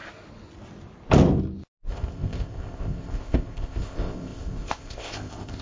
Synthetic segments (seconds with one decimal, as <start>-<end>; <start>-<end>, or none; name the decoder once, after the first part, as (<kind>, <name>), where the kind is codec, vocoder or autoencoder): 1.9-5.6 (codec, ZipCodec)